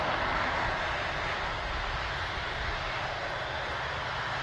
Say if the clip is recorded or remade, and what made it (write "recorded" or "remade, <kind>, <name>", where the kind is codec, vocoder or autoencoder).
recorded